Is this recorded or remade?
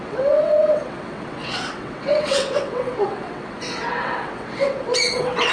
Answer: remade